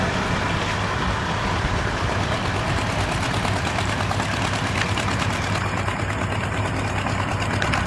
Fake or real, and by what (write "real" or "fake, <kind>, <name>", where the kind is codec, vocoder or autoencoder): fake, vocoder, BigVGAN v2